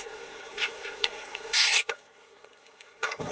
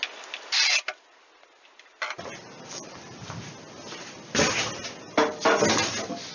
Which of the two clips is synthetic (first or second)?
first